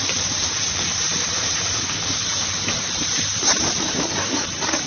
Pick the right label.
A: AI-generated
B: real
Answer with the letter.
A